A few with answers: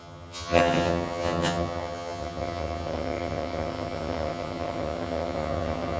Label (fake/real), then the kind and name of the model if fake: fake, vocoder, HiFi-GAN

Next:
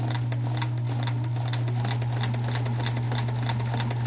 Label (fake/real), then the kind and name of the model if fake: real